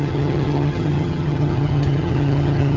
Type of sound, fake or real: fake